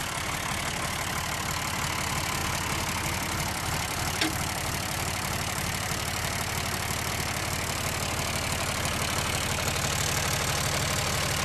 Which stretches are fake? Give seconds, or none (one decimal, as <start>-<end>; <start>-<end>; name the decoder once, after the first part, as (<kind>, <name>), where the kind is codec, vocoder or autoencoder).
none